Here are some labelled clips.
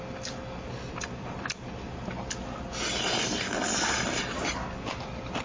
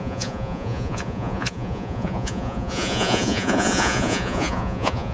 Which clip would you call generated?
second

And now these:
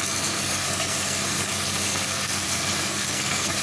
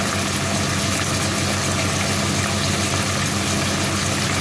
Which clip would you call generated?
first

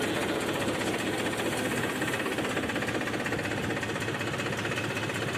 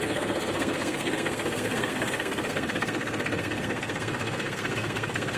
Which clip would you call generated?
second